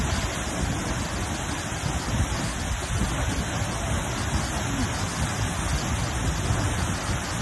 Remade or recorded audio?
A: recorded